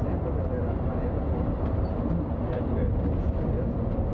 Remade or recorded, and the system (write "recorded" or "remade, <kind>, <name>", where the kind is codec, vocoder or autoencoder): recorded